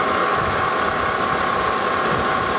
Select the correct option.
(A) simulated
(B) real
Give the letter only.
B